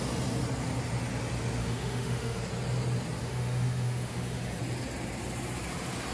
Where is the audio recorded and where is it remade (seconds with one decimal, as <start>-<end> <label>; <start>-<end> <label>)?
0.0-1.6 recorded; 1.6-2.4 remade; 2.4-3.2 recorded; 3.2-4.6 remade; 4.6-6.1 recorded